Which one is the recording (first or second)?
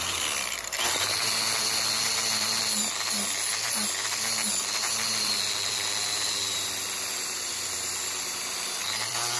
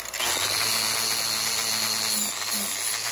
second